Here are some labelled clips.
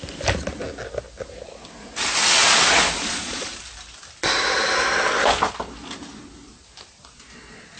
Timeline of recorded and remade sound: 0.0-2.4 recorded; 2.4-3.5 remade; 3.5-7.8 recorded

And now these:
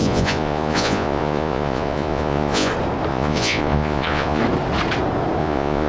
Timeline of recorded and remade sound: 0.0-2.7 remade; 2.7-3.1 recorded; 3.1-4.4 remade; 4.4-5.4 recorded; 5.4-5.9 remade